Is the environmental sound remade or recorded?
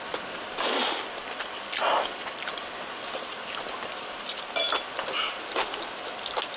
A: recorded